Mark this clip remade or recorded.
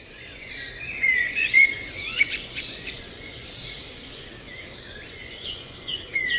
remade